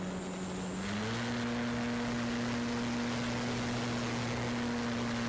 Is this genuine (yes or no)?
yes